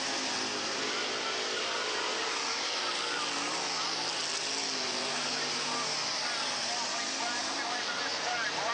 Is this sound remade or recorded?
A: recorded